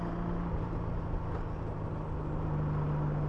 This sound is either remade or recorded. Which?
recorded